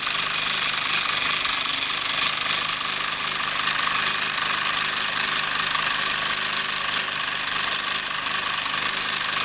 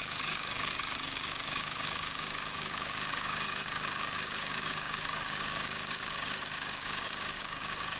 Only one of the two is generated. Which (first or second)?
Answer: second